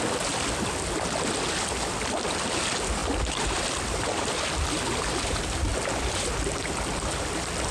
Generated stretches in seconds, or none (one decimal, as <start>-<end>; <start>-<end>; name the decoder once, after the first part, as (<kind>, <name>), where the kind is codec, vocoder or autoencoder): none